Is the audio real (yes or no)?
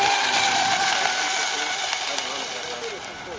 yes